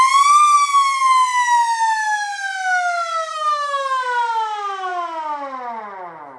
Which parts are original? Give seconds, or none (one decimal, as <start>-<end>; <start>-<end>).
0.0-3.3; 4.0-6.4